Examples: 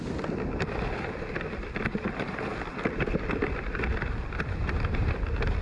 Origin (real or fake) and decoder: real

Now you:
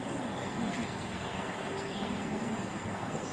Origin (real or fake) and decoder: fake, codec, SNAC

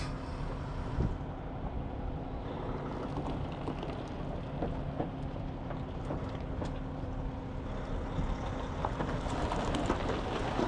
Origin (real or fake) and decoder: real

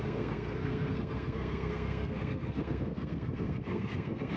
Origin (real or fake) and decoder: fake, codec, SNAC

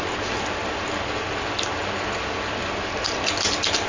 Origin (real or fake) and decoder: real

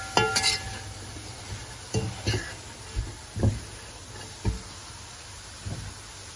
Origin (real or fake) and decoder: real